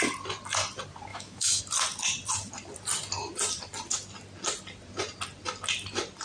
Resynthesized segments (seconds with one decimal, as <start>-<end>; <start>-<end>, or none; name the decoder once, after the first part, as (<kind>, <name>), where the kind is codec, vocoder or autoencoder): 1.1-1.6 (autoencoder, DAC-VAE)